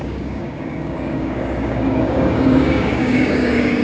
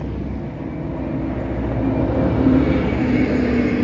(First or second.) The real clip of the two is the second